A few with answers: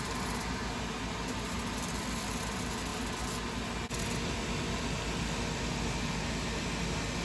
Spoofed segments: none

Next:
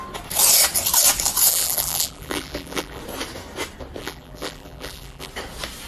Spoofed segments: 1.5-3.0; 4.0-5.3

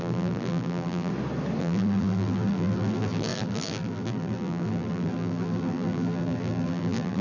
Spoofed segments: 0.0-1.1; 1.6-7.2

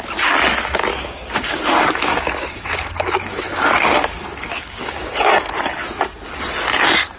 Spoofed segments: 0.9-5.2; 5.8-6.3

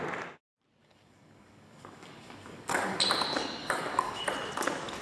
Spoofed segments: 0.8-3.0; 3.6-4.3